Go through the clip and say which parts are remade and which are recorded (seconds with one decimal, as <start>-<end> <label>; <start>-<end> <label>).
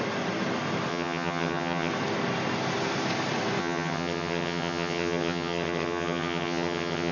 0.0-0.9 recorded; 0.9-1.9 remade; 1.9-3.6 recorded; 3.6-7.1 remade